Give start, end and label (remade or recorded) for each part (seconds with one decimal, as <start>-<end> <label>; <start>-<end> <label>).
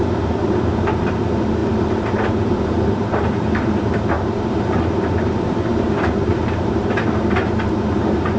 0.0-8.4 remade